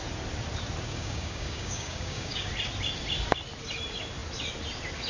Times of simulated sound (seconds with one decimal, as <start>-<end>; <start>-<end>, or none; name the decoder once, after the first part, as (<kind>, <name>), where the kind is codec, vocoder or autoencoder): 0.9-2.5 (codec, DAC)